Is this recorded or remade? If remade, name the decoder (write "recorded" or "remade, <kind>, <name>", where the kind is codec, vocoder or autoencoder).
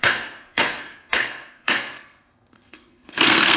remade, codec, SNAC